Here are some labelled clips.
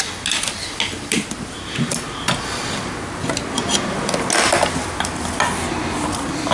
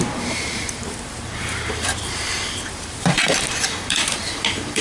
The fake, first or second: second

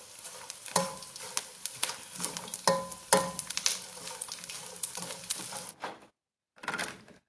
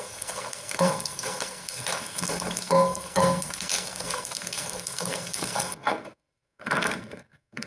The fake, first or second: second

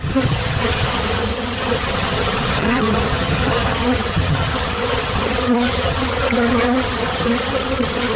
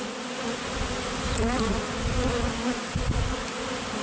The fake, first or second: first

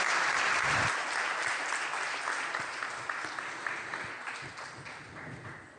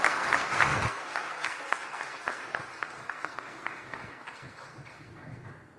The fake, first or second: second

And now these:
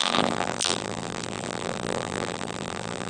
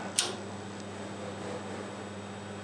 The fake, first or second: first